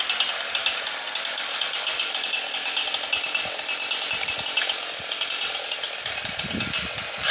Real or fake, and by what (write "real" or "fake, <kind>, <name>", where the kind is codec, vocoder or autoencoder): real